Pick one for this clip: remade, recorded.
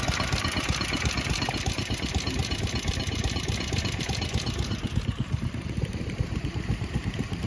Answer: remade